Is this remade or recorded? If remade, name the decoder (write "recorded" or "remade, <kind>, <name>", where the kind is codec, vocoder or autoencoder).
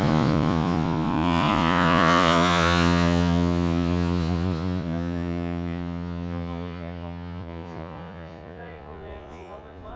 remade, vocoder, Vocos